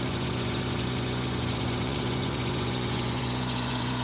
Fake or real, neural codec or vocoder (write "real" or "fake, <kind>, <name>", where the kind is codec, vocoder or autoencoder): fake, vocoder, Vocos